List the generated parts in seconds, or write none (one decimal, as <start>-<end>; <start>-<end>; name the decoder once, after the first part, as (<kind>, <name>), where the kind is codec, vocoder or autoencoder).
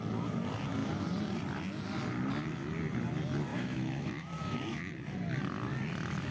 3.5-4.9 (autoencoder, DAC-VAE)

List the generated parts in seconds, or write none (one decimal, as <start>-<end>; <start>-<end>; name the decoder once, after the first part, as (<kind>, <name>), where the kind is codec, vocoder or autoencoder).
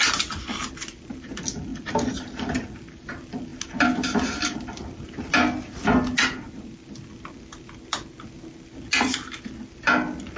none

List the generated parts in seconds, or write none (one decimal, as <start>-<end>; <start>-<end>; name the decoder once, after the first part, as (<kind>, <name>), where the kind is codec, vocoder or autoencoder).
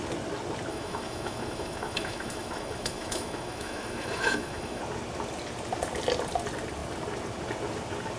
0.7-4.8 (autoencoder, DAC-VAE)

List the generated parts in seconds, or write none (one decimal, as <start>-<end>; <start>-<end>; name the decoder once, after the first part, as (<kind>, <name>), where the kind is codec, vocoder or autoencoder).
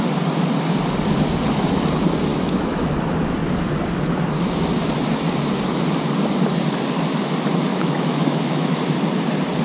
2.3-2.9 (autoencoder, DAC-VAE); 7.7-8.8